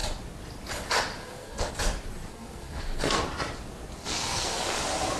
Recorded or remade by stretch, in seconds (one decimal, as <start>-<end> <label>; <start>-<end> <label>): 0.0-1.2 recorded; 1.2-1.7 remade; 1.7-2.3 recorded; 2.3-3.2 remade; 3.2-4.0 recorded; 4.0-4.8 remade; 4.8-5.2 recorded